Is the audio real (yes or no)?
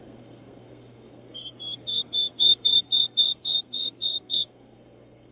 no